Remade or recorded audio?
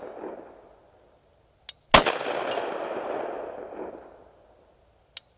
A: recorded